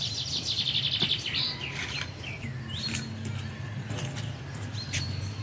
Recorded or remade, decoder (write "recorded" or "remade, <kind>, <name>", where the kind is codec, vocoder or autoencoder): recorded